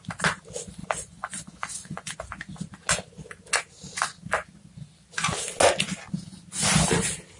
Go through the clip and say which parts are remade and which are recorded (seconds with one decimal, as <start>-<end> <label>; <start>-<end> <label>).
0.0-0.8 recorded; 0.8-2.1 remade; 2.1-7.4 recorded